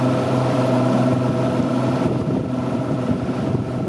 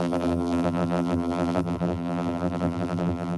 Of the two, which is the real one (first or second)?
first